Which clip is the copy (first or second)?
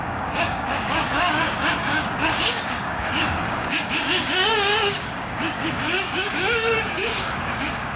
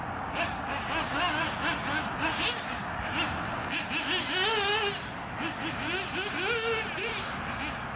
first